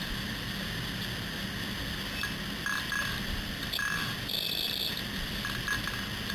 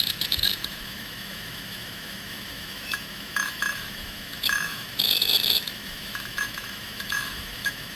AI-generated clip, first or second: second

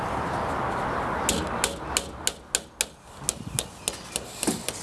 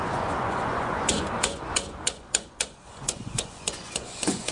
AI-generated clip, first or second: second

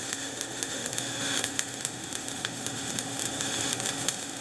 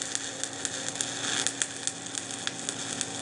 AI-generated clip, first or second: first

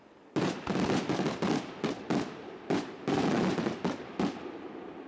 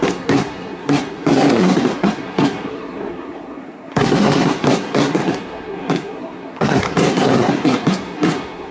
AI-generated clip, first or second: second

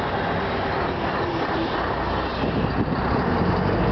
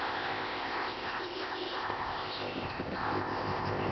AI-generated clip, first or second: second